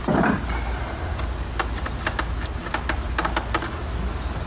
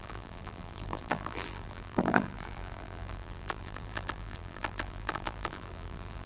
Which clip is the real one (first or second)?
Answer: first